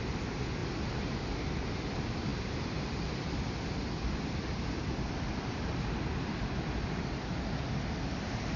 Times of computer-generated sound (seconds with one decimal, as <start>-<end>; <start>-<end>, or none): 2.3-7.1